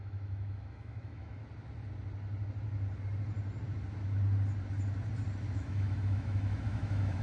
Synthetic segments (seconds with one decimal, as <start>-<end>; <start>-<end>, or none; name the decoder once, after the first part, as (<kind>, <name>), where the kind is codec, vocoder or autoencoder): 0.0-1.4 (autoencoder, DAC-VAE); 5.5-7.2